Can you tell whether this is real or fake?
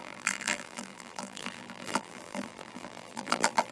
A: fake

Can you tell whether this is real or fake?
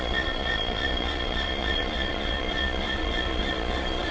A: fake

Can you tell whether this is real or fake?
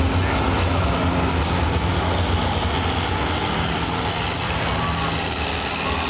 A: real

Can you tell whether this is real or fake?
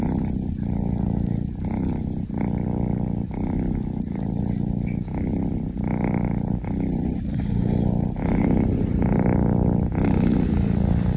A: real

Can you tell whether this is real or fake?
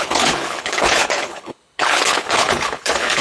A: fake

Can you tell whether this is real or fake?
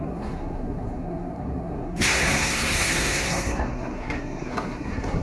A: fake